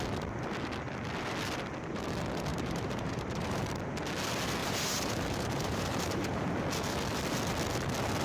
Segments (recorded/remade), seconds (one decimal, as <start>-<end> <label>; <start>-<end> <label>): 0.0-2.5 recorded; 2.5-3.6 remade; 3.6-4.6 recorded; 4.6-6.5 remade; 6.5-8.2 recorded